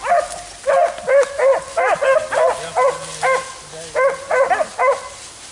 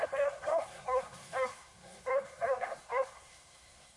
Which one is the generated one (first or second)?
second